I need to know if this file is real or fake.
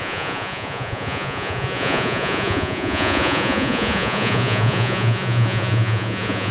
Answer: fake